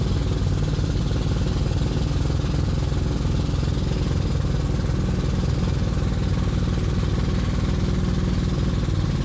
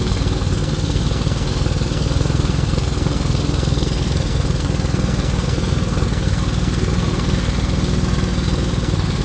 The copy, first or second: second